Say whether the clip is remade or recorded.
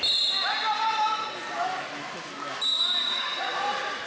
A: recorded